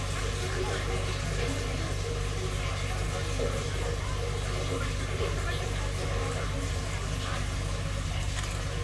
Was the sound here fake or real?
real